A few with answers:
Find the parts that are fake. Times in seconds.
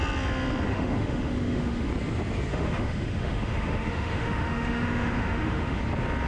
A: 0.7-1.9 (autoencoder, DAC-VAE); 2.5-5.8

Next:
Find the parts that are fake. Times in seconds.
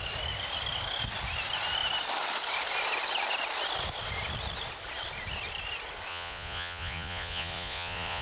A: 6.1-8.2 (vocoder, Vocos)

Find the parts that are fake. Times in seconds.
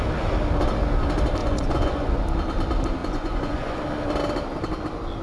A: 1.4-2.1 (vocoder, Vocos); 3.0-3.8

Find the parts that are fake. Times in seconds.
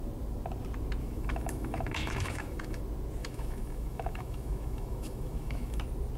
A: 1.0-2.8 (autoencoder, DAC-VAE); 3.2-5.8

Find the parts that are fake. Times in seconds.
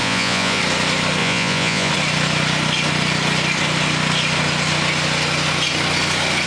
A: 0.0-0.6 (vocoder, Vocos); 1.2-1.9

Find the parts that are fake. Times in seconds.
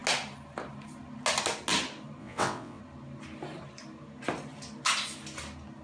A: 2.2-2.8 (vocoder, WaveNeXt)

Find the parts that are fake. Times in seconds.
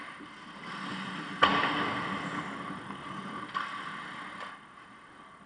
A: none